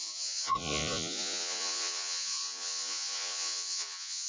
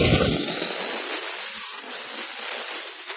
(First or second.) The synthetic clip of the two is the first